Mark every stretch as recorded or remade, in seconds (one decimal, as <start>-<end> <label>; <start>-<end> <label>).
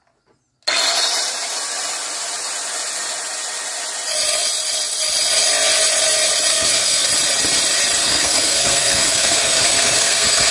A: 0.0-6.5 recorded; 6.5-7.1 remade; 7.1-8.0 recorded; 8.0-10.5 remade